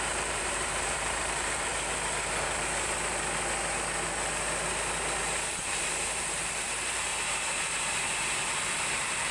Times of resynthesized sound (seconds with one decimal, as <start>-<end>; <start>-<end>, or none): 0.0-1.7; 5.5-7.1; 8.4-9.3